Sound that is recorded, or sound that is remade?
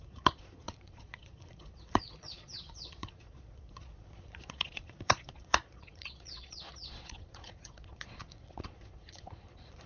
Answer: remade